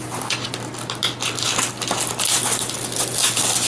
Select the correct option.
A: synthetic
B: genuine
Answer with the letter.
B